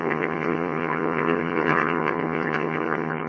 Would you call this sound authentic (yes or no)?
no